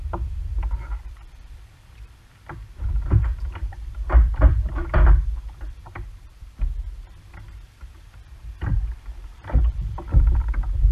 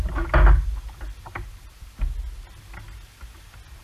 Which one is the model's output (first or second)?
first